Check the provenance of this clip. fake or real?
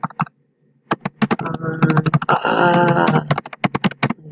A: real